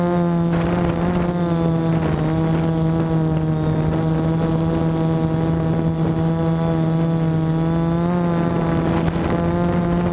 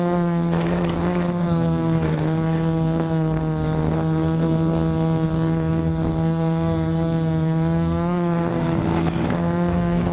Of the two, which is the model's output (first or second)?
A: second